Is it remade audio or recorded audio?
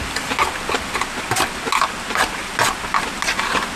recorded